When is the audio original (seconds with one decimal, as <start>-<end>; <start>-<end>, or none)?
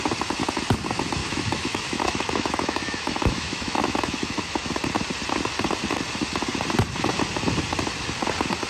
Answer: 0.0-1.2; 4.7-8.7